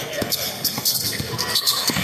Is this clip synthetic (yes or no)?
yes